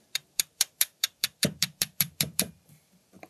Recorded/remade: remade